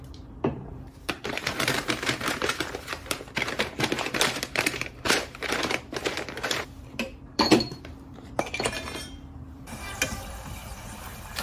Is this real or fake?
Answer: fake